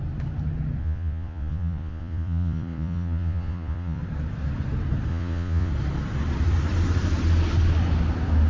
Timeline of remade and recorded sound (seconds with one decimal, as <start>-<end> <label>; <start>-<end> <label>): 0.0-0.8 recorded; 0.8-4.0 remade; 4.0-5.1 recorded; 5.1-5.7 remade; 5.7-8.5 recorded